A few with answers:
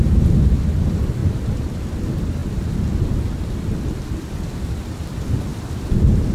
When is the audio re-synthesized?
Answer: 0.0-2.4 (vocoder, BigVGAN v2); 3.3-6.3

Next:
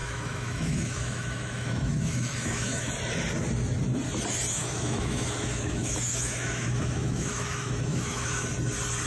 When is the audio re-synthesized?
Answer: 0.0-2.9 (autoencoder, DAC-VAE); 4.5-8.5

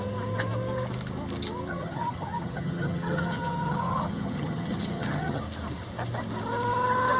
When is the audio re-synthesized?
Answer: 1.7-5.4 (vocoder, HiFi-GAN)

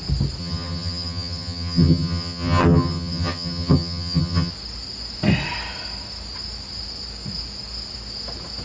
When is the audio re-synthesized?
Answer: 0.4-4.5 (vocoder, HiFi-GAN)

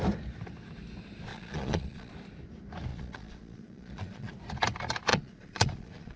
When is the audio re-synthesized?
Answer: 1.3-2.1 (vocoder, Vocos); 2.9-4.3; 5.1-6.2

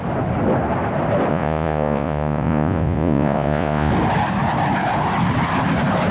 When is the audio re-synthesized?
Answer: 1.3-3.9 (vocoder, Vocos)

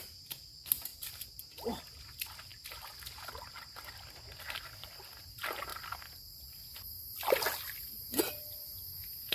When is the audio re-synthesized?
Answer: none